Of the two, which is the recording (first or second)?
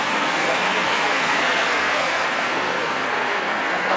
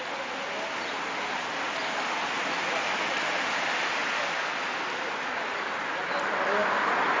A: second